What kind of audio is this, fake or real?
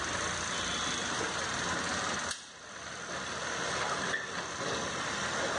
real